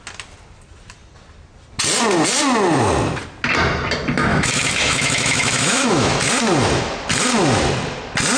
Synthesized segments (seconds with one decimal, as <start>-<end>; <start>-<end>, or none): 4.3-6.3